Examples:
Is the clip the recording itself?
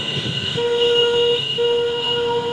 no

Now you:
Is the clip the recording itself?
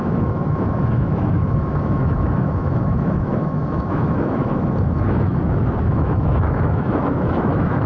no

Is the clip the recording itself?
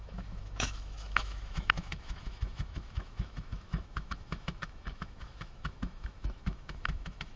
no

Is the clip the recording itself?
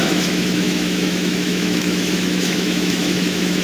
no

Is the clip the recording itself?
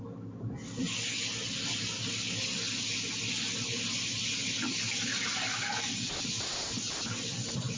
yes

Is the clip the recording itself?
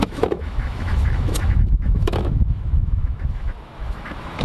no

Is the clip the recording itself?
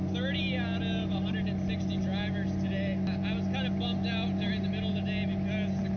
yes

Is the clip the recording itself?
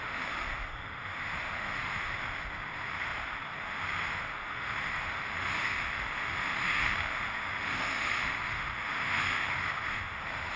no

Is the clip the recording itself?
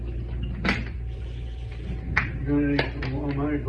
yes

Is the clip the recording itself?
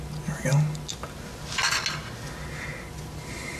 yes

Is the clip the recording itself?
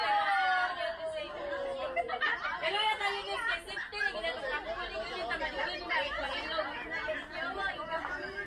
yes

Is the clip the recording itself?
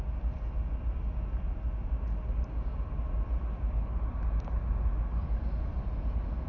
yes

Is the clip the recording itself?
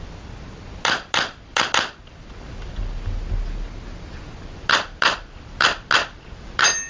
yes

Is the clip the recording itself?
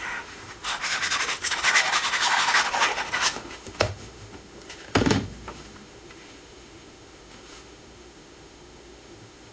no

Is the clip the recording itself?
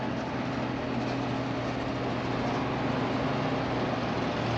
yes